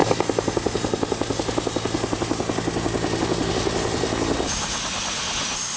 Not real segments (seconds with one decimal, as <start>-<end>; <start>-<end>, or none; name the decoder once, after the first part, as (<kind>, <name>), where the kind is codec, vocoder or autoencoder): none